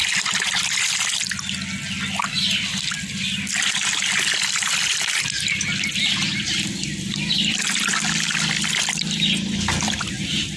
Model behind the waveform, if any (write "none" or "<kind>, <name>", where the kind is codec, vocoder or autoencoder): none